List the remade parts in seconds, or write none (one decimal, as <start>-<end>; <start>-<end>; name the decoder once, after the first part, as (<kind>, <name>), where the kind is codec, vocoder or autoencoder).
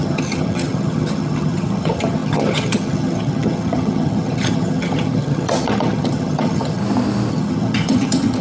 0.0-6.8 (vocoder, HiFi-GAN); 7.3-8.4